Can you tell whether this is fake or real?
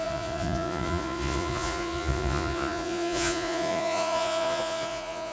fake